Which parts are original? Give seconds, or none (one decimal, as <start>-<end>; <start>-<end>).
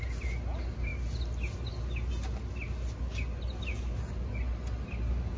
0.0-5.4